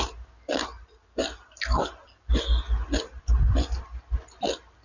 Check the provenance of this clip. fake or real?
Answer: real